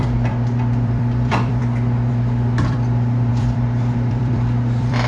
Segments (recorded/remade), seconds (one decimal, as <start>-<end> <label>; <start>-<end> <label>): 0.0-1.6 remade; 1.6-2.1 recorded; 2.1-5.1 remade